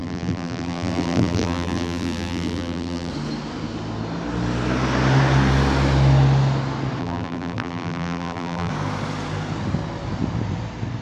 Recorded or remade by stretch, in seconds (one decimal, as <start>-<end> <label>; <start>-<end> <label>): 0.0-3.1 remade; 3.1-7.0 recorded; 7.0-8.7 remade; 8.7-11.0 recorded